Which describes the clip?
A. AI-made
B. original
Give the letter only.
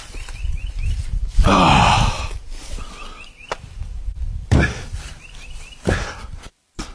A